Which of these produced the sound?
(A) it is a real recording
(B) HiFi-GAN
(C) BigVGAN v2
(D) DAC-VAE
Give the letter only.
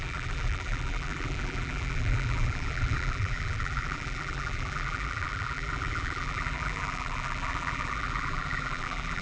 C